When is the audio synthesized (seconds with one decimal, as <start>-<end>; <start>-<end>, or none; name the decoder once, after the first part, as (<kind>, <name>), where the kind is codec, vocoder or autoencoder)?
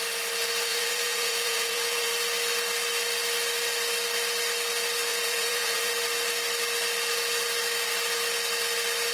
0.7-2.1 (vocoder, Vocos); 5.1-6.0